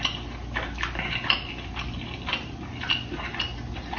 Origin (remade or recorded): recorded